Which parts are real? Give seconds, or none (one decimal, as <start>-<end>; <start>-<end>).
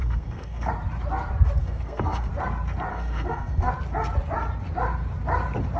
0.7-1.6; 2.3-2.9; 3.7-5.8